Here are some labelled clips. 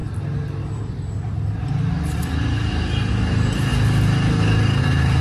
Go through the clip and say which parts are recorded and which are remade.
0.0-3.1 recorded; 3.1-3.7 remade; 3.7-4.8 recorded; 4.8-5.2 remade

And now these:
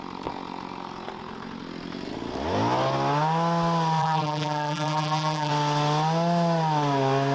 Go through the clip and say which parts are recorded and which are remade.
0.0-4.0 recorded; 4.0-5.5 remade; 5.5-7.3 recorded

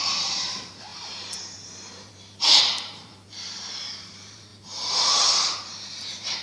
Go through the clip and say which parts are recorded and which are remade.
0.0-6.4 remade

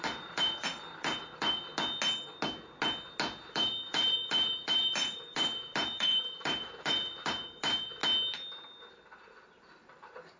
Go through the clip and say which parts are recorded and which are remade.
0.0-1.7 remade; 1.7-3.4 recorded; 3.4-8.0 remade; 8.0-8.8 recorded; 8.8-10.4 remade

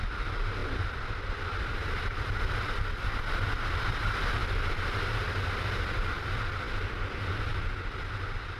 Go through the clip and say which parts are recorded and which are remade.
0.0-0.6 recorded; 0.6-4.2 remade; 4.2-8.6 recorded

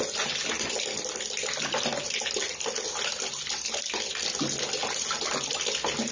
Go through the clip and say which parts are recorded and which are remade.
0.0-6.1 recorded